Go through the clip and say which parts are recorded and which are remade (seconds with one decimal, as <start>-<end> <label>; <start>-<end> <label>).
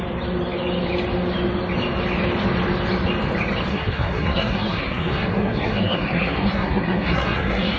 0.0-3.7 recorded; 3.7-7.8 remade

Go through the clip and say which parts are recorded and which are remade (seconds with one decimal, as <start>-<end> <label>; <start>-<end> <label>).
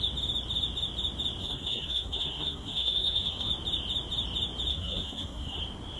0.0-1.4 recorded; 1.4-3.5 remade; 3.5-4.7 recorded; 4.7-5.6 remade; 5.6-6.0 recorded